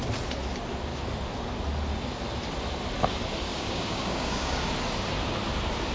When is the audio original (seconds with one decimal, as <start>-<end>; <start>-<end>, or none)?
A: 0.0-3.5; 4.7-5.9